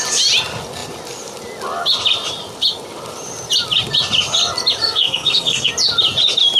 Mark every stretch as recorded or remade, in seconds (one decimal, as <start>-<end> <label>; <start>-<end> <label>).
0.0-4.8 recorded; 4.8-5.7 remade; 5.7-6.6 recorded